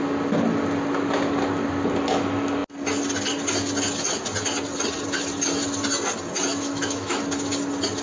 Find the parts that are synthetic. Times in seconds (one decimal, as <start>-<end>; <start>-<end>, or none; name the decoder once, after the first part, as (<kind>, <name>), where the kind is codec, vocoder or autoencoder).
6.5-7.2 (autoencoder, DAC-VAE)